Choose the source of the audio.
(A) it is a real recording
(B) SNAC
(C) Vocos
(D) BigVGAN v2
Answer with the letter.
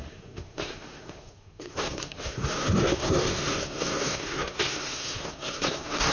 B